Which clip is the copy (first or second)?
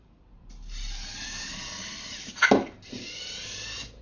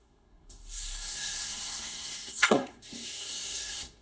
second